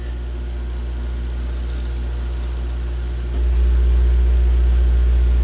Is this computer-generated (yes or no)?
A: no